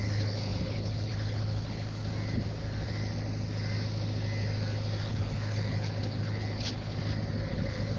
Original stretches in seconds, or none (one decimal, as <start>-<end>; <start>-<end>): 2.0-5.0; 7.0-7.5